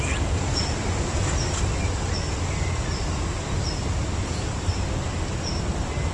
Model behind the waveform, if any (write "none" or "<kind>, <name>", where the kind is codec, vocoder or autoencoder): none